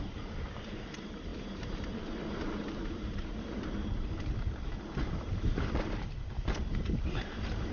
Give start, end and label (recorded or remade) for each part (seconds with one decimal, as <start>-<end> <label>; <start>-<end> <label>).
0.0-7.7 remade